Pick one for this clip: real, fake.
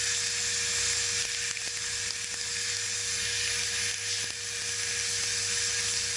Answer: real